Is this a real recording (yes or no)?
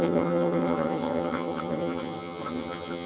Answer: no